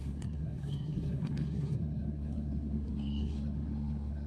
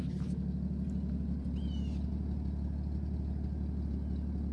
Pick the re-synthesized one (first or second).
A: first